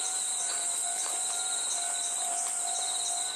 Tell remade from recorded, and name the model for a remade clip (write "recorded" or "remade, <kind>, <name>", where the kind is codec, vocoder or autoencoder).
recorded